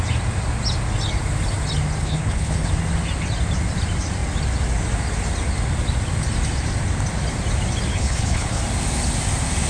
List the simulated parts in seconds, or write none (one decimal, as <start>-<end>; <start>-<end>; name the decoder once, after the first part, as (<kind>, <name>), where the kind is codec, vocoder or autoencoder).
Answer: 2.0-2.7 (codec, HILCodec); 7.9-8.6